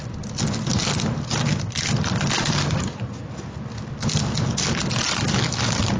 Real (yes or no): yes